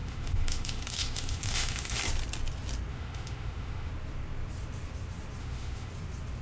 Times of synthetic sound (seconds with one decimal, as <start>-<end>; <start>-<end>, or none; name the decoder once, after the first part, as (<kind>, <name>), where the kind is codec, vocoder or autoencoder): 0.0-2.0 (autoencoder, DAC-VAE); 2.9-3.9; 5.4-5.9